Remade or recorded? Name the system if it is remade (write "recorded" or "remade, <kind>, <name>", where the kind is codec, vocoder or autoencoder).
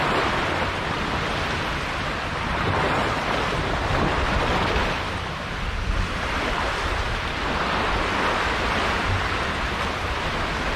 recorded